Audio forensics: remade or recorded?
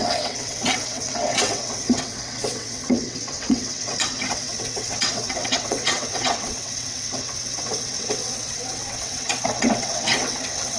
remade